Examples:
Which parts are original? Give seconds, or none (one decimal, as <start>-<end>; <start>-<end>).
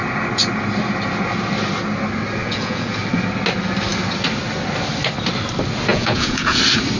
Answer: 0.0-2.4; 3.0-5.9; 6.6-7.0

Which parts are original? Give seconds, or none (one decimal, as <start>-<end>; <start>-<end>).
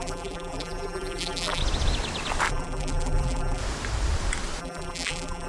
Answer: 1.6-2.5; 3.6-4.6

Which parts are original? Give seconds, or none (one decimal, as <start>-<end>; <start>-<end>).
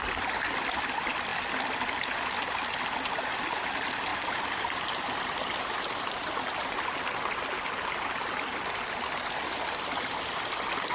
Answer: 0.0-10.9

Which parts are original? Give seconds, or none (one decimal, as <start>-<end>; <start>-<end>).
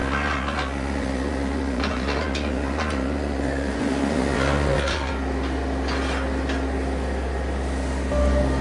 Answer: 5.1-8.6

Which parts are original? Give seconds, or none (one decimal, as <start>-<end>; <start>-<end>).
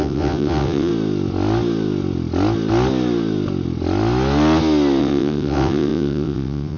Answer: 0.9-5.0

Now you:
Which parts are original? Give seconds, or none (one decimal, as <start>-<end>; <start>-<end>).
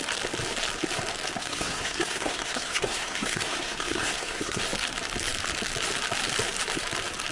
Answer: 0.0-1.4; 4.6-7.3